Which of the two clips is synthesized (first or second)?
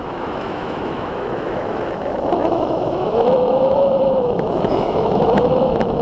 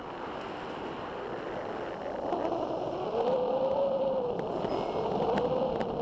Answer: first